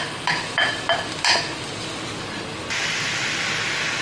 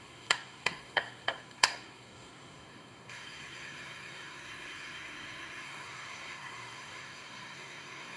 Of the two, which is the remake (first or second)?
second